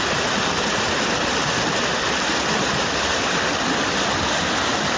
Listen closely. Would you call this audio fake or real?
real